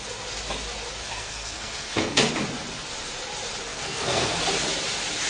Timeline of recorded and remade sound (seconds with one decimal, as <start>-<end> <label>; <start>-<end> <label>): 0.0-1.0 recorded; 1.0-2.3 remade; 2.3-3.7 recorded; 3.7-4.4 remade; 4.4-5.3 recorded